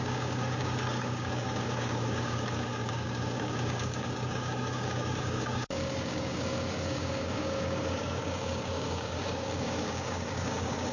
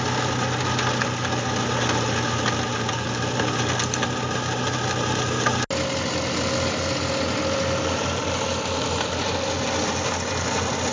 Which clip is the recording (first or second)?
second